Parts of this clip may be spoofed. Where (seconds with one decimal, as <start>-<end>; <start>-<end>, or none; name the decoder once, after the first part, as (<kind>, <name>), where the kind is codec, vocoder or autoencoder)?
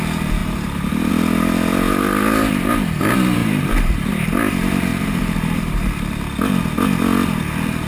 0.4-1.1 (vocoder, BigVGAN v2); 3.4-4.1; 4.9-5.9